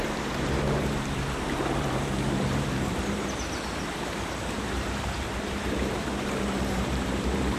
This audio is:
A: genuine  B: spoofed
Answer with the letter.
B